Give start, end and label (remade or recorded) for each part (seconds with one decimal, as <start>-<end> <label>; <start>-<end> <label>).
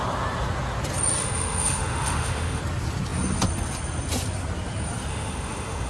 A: 0.0-1.2 recorded; 1.2-2.6 remade; 2.6-5.1 recorded; 5.1-5.9 remade